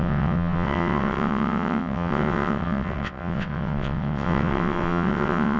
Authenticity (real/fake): fake